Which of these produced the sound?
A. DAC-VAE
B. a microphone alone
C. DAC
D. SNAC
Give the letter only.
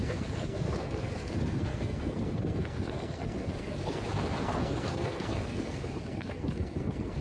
D